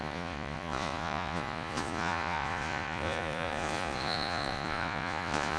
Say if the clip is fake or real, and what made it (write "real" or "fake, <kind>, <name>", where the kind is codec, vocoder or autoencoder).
fake, vocoder, Vocos